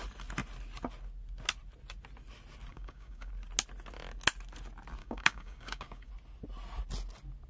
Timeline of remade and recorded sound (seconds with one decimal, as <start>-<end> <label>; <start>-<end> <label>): 0.0-2.7 recorded; 2.7-3.3 remade; 3.3-5.0 recorded; 5.0-6.1 remade; 6.1-7.5 recorded